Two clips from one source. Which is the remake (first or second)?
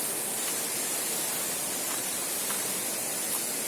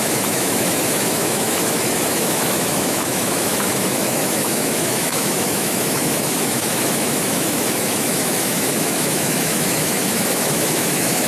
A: second